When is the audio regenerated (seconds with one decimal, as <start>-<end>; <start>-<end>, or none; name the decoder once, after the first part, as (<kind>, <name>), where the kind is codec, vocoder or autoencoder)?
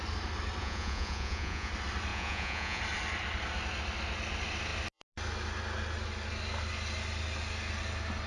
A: 0.6-1.7 (vocoder, Vocos); 2.1-2.8